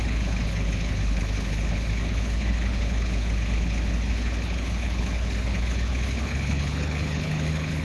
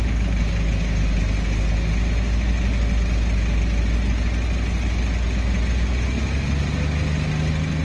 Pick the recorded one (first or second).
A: second